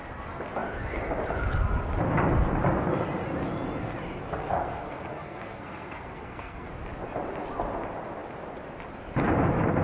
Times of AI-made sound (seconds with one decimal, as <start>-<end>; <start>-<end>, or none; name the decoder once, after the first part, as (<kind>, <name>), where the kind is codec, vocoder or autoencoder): 4.6-6.7 (codec, SNAC)